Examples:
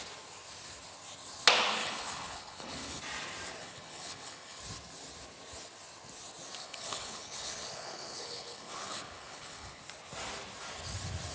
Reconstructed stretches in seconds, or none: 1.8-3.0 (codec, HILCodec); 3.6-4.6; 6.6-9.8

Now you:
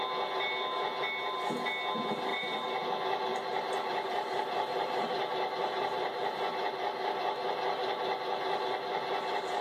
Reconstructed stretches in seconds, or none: 2.3-2.8 (vocoder, BigVGAN v2); 3.3-6.4

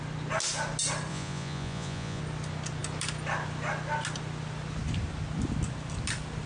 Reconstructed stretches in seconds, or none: 1.1-2.2 (vocoder, Vocos)

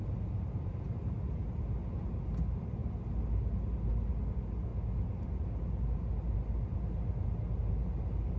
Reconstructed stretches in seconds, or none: 0.0-0.9 (vocoder, BigVGAN v2)